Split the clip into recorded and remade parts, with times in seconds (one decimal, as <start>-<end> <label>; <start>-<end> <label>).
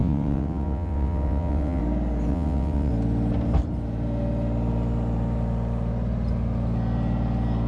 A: 0.0-1.8 remade; 1.8-2.3 recorded; 2.3-2.9 remade; 2.9-7.7 recorded